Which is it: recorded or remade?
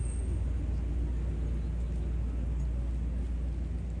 recorded